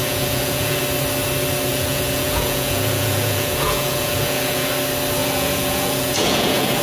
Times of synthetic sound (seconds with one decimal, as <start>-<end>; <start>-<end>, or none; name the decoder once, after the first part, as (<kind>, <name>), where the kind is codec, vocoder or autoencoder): 0.0-0.8 (vocoder, Vocos); 1.7-4.7; 5.2-6.8